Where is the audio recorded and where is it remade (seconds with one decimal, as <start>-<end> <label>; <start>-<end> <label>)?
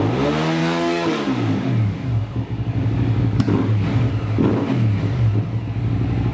0.0-0.6 recorded; 0.6-4.1 remade; 4.1-6.3 recorded